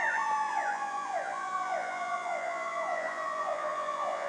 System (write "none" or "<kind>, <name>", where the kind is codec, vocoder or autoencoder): vocoder, Vocos